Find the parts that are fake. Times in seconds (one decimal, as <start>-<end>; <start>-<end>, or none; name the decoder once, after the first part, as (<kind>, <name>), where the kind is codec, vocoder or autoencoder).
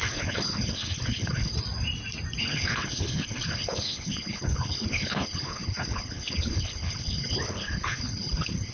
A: 0.0-1.5 (codec, HILCodec); 2.4-8.7